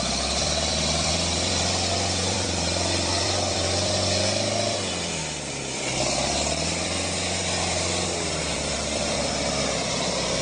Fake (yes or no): yes